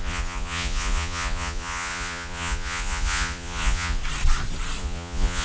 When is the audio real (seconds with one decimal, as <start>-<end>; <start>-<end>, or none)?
4.0-4.8